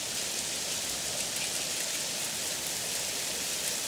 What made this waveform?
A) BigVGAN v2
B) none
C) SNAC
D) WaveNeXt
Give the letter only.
B